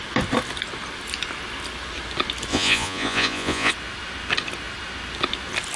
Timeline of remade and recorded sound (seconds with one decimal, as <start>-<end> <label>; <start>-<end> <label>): 0.0-2.5 recorded; 2.5-3.7 remade; 3.7-5.8 recorded